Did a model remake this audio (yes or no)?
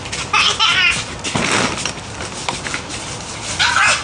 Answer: no